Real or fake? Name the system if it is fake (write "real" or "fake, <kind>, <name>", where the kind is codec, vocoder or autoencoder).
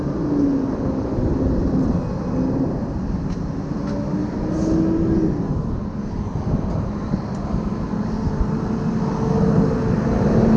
real